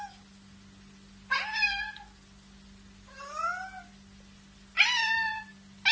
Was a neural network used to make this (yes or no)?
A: no